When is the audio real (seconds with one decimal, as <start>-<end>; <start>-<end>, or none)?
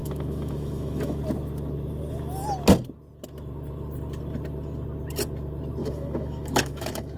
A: 1.2-5.8